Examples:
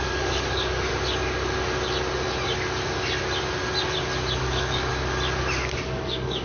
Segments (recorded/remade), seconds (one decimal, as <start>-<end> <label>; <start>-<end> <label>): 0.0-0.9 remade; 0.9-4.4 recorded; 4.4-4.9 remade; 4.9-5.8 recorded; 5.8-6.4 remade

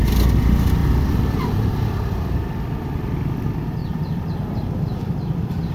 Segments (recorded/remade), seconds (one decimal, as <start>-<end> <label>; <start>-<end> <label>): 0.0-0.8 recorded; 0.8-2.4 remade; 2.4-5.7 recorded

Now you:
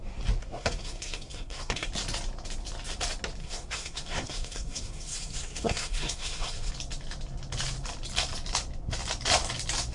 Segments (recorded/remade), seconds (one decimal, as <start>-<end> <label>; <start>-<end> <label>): 0.0-0.4 recorded; 0.4-1.9 remade; 1.9-3.4 recorded; 3.4-6.7 remade; 6.7-9.9 recorded

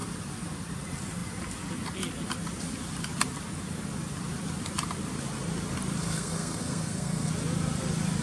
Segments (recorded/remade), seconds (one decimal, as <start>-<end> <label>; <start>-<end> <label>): 0.0-6.0 recorded; 6.0-7.3 remade; 7.3-8.2 recorded

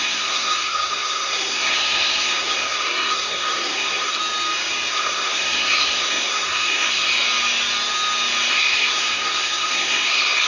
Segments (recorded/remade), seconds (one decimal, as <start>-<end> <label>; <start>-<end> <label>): 0.0-4.2 remade; 4.2-4.9 recorded; 4.9-7.1 remade; 7.1-8.5 recorded; 8.5-10.5 remade

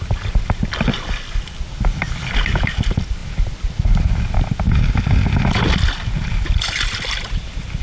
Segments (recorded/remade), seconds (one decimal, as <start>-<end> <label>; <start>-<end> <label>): 0.0-7.8 recorded